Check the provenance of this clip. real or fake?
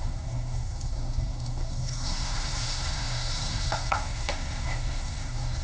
fake